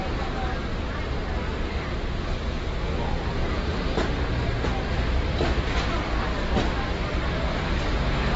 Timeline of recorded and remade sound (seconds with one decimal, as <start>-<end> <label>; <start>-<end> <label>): 0.0-0.7 recorded; 0.7-1.9 remade; 1.9-3.4 recorded; 3.4-5.6 remade; 5.6-8.4 recorded